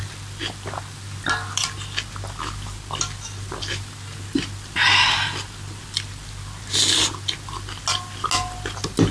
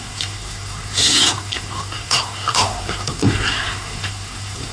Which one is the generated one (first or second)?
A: second